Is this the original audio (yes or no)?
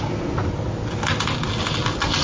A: yes